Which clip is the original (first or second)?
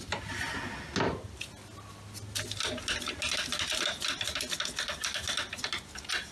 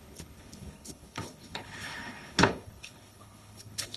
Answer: first